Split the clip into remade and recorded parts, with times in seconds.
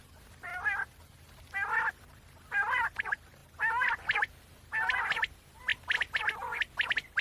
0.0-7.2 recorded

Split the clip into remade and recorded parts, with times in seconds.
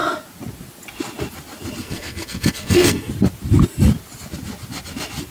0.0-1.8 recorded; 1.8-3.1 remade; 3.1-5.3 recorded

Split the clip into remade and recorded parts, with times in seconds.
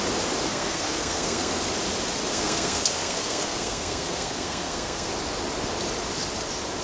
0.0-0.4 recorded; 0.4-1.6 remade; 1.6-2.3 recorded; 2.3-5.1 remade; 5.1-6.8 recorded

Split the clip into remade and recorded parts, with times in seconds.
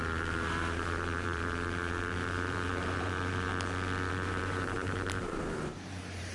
0.0-3.5 remade; 3.5-4.1 recorded; 4.1-6.3 remade